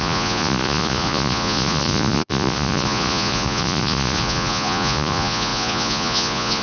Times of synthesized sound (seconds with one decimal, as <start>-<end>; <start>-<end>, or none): 0.0-6.6